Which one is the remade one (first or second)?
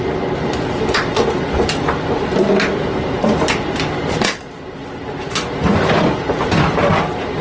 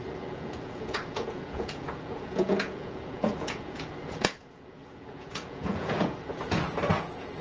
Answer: second